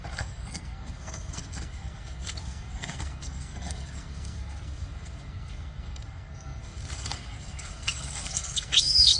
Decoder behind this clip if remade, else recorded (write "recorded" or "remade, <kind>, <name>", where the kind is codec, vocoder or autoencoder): remade, codec, SNAC